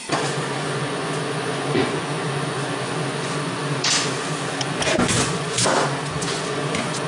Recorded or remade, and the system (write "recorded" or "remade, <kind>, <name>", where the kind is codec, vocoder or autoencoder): remade, vocoder, Vocos